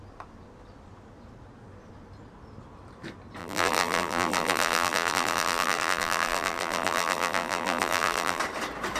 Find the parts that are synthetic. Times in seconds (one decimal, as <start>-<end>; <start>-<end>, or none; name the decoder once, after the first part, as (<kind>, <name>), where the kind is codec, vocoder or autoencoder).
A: 3.4-8.4 (vocoder, BigVGAN v2)